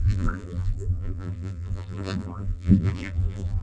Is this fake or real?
fake